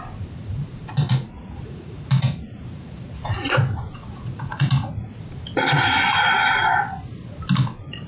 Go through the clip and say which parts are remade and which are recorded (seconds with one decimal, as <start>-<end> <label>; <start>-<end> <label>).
0.0-0.4 recorded; 0.4-5.2 remade; 5.2-8.1 recorded